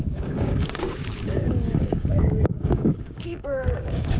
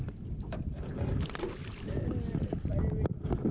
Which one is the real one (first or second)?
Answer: second